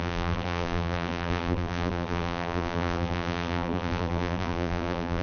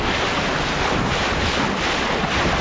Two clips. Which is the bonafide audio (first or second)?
second